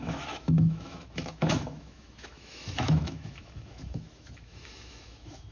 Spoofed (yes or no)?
yes